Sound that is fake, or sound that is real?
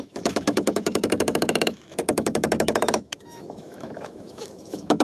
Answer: fake